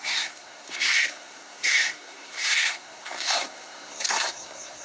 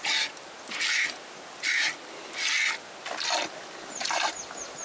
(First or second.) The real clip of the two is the second